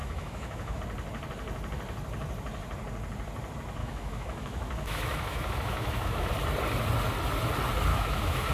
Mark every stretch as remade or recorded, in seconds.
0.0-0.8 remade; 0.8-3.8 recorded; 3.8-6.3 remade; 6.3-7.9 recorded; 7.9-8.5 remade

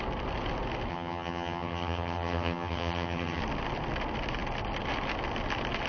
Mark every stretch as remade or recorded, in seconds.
0.0-0.9 recorded; 0.9-3.4 remade; 3.4-5.9 recorded

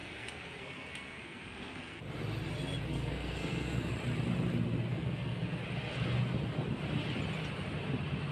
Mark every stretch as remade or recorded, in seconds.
0.0-2.0 remade; 2.0-2.9 recorded; 2.9-3.9 remade; 3.9-4.9 recorded; 4.9-5.4 remade; 5.4-8.3 recorded

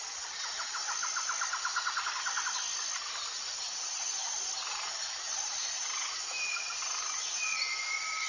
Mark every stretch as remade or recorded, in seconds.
0.0-3.6 recorded; 3.6-4.3 remade; 4.3-5.5 recorded; 5.5-7.6 remade; 7.6-8.3 recorded

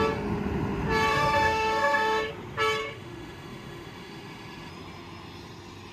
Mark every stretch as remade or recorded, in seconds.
0.0-1.1 recorded; 1.1-2.3 remade; 2.3-2.8 recorded; 2.8-4.7 remade; 4.7-5.9 recorded

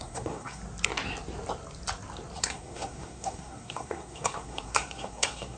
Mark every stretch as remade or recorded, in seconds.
0.0-0.6 remade; 0.6-2.4 recorded; 2.4-5.6 remade

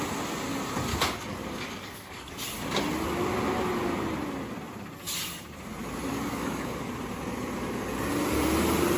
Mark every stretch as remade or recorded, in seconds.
0.0-0.9 recorded; 0.9-2.3 remade; 2.3-6.1 recorded; 6.1-6.9 remade; 6.9-9.0 recorded

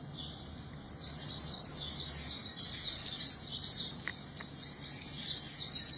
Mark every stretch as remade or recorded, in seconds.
0.0-6.0 recorded